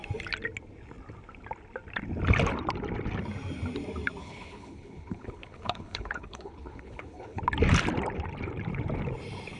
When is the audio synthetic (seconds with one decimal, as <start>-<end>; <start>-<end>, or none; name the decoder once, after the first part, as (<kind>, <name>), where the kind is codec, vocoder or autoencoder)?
4.2-7.4 (codec, HILCodec)